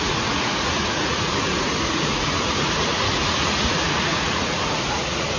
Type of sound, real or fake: fake